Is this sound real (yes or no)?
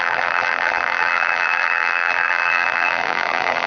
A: no